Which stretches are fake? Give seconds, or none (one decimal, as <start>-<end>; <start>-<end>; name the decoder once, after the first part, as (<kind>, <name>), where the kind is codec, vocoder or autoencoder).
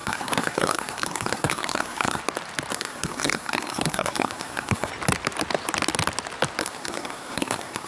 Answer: 0.0-2.2 (codec, SNAC); 2.7-4.9; 6.6-7.9